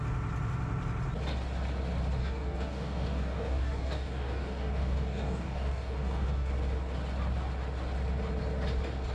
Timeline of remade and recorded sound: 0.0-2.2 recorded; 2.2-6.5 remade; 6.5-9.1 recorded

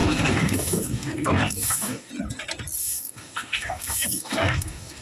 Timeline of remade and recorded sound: 0.0-2.1 remade; 2.1-2.8 recorded; 2.8-5.0 remade

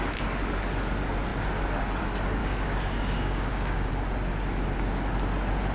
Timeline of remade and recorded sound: 0.0-2.4 recorded; 2.4-3.9 remade; 3.9-5.7 recorded

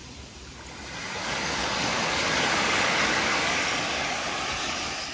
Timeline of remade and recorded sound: 0.0-1.2 recorded; 1.2-4.3 remade; 4.3-5.1 recorded

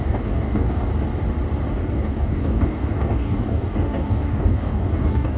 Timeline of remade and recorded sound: 0.0-0.9 remade; 0.9-1.7 recorded; 1.7-5.4 remade

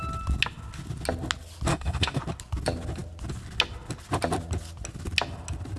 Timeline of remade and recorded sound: 0.0-1.7 recorded; 1.7-2.2 remade; 2.2-5.8 recorded

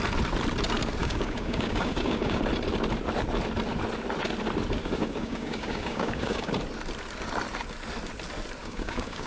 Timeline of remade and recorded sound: 0.0-1.0 recorded; 1.0-2.4 remade; 2.4-4.8 recorded; 4.8-6.5 remade; 6.5-8.6 recorded; 8.6-9.3 remade